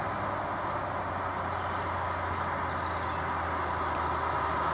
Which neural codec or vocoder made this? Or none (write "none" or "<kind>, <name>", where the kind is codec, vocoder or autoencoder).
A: none